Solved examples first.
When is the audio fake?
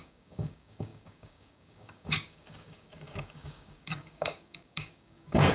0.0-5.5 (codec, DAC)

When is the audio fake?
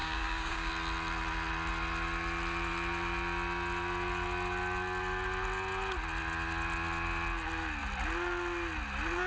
0.0-0.7 (codec, DAC)